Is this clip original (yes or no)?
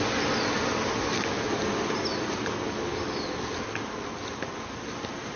yes